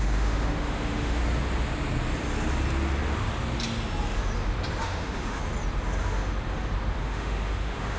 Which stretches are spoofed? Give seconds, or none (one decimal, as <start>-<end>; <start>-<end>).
0.0-1.2; 4.8-5.4; 7.0-8.0